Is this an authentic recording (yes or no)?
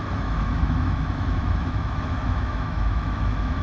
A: no